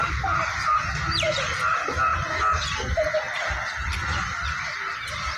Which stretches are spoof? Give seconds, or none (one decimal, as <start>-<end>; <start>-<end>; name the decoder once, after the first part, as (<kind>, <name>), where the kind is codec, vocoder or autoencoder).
none